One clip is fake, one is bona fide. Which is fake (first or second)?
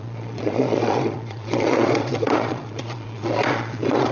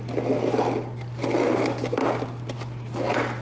first